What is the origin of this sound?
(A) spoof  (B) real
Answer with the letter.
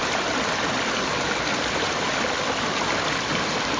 B